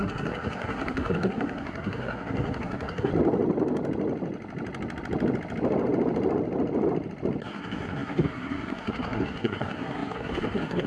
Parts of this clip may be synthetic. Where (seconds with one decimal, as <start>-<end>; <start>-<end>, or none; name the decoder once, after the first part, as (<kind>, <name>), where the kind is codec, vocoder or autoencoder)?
0.0-3.1 (codec, SNAC); 7.4-10.9